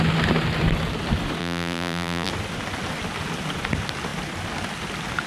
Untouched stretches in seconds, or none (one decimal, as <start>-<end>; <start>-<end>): 0.0-1.4; 2.3-5.3